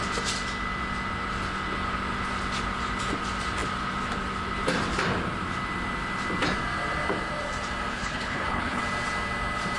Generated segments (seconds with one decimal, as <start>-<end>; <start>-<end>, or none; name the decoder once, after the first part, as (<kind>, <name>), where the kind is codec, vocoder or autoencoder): 7.9-8.8 (codec, HILCodec)